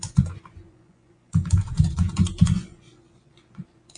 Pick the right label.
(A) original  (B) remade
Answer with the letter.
B